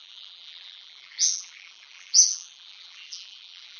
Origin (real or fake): fake